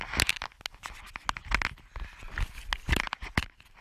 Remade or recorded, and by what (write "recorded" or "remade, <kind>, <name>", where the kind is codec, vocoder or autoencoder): recorded